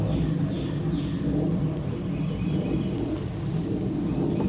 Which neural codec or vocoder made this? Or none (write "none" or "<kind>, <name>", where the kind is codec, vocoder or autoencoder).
none